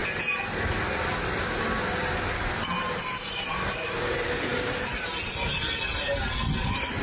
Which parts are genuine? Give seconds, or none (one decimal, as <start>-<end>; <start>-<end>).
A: 0.0-3.0